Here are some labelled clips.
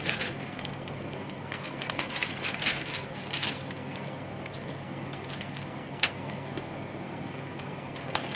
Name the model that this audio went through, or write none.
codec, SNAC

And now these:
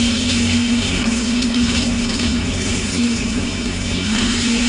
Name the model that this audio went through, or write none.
codec, SNAC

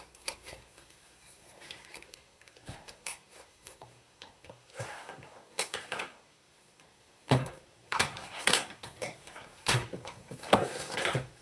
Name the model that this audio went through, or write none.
codec, SNAC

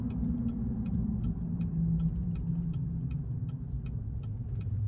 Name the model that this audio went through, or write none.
none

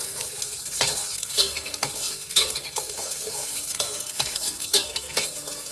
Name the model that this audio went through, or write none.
codec, SNAC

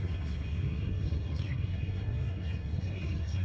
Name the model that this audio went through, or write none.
codec, SNAC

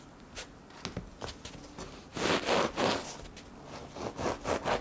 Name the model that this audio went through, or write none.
none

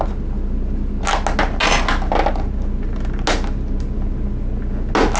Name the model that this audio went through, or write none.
none